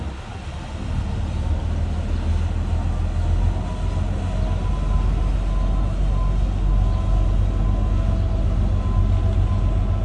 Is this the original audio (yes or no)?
yes